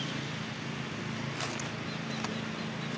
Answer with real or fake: real